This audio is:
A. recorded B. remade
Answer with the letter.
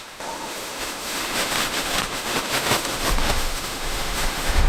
B